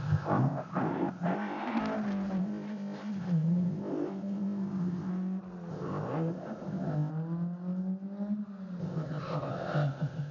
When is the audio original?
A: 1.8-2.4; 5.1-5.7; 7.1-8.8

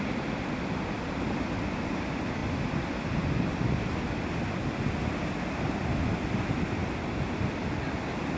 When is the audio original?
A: 0.0-8.4

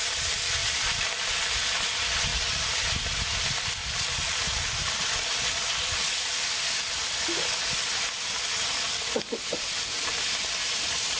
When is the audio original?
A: 0.0-11.2